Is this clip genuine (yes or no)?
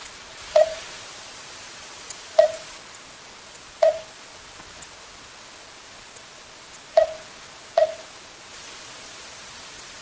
no